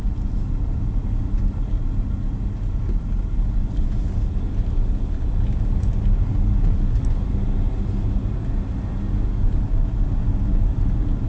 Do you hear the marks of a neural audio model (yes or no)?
no